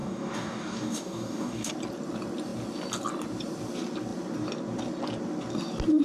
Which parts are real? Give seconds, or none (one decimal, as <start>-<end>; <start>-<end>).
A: 1.7-6.0